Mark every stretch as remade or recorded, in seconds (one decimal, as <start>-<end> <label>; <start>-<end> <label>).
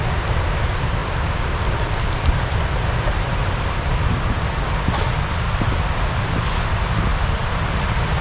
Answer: 0.0-1.0 recorded; 1.0-5.2 remade; 5.2-7.1 recorded; 7.1-8.2 remade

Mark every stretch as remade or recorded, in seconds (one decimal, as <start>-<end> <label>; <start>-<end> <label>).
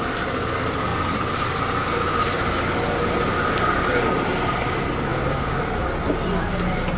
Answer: 0.0-7.0 recorded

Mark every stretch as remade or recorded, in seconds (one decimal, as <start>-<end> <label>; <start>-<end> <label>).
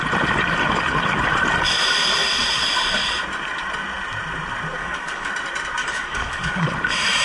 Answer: 0.0-4.8 recorded; 4.8-5.3 remade; 5.3-5.8 recorded; 5.8-6.7 remade; 6.7-7.2 recorded